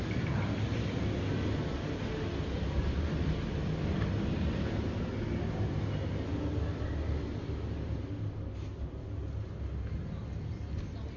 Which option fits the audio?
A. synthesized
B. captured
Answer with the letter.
B